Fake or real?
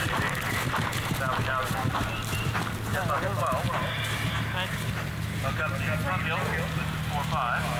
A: real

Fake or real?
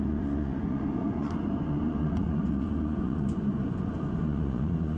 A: fake